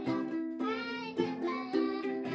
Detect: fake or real fake